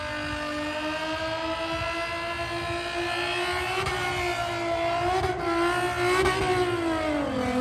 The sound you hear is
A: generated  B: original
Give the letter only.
B